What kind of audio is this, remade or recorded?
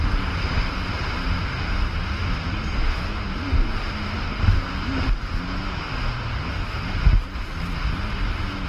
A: recorded